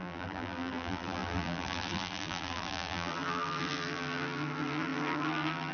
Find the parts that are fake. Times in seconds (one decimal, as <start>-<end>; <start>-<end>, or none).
0.0-5.7